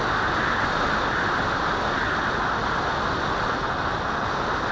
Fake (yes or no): no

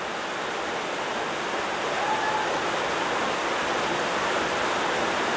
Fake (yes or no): no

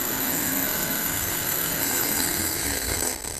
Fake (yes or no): yes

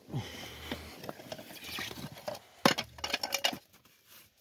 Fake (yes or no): no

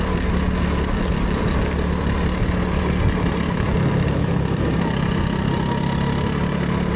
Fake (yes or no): no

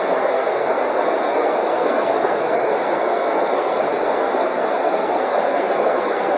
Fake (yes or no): yes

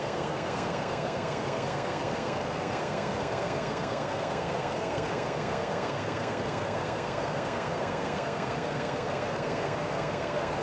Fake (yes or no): yes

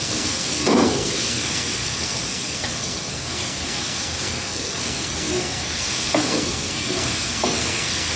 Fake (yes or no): yes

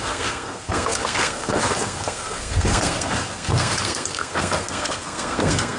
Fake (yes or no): yes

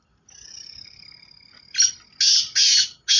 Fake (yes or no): no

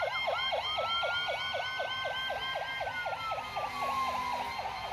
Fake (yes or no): no